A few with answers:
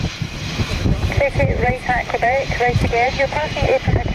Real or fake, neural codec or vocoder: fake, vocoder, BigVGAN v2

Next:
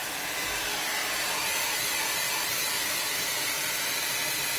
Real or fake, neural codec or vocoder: real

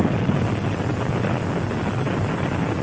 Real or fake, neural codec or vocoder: real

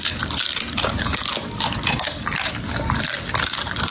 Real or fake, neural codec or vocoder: fake, vocoder, BigVGAN v2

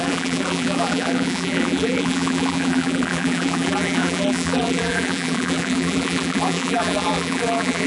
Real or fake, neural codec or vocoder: fake, vocoder, BigVGAN v2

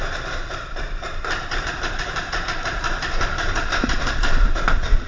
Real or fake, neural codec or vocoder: fake, vocoder, BigVGAN v2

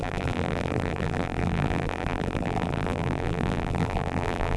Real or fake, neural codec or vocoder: fake, vocoder, BigVGAN v2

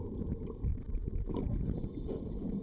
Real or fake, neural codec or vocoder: fake, vocoder, BigVGAN v2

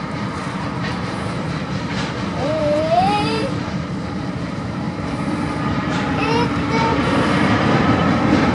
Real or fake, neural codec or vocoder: fake, vocoder, BigVGAN v2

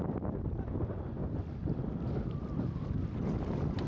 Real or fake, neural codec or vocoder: real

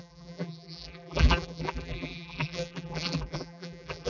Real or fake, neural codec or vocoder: fake, vocoder, BigVGAN v2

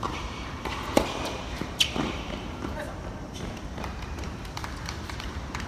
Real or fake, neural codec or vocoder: fake, vocoder, BigVGAN v2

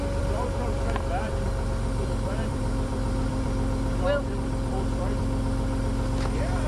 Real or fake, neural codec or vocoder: fake, vocoder, BigVGAN v2